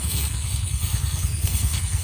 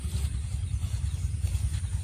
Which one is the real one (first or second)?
second